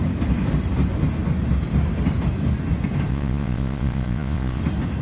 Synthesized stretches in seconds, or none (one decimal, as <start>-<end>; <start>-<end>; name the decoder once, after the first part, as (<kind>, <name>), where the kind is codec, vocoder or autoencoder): 3.1-4.6 (vocoder, Vocos)

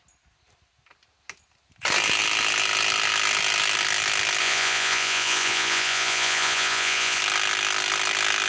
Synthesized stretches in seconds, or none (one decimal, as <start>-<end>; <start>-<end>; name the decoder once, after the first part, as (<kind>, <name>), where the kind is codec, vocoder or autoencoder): 4.4-7.2 (vocoder, Vocos)